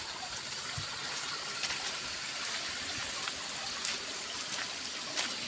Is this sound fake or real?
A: real